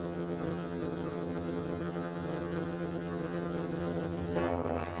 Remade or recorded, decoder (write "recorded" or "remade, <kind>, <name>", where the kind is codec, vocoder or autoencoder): remade, vocoder, HiFi-GAN